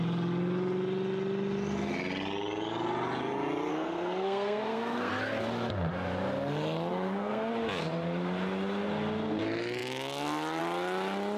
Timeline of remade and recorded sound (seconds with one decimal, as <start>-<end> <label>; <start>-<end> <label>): 0.0-3.7 recorded; 3.7-5.1 remade; 5.1-6.9 recorded; 6.9-7.5 remade; 7.5-11.4 recorded